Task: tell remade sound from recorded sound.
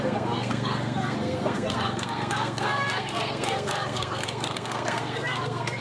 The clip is remade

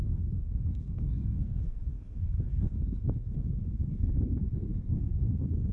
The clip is remade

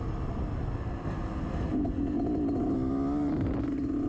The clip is recorded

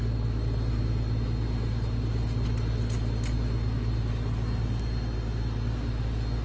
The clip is recorded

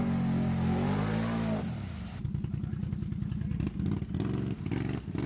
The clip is recorded